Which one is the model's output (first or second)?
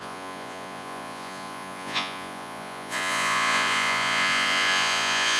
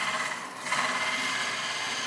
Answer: first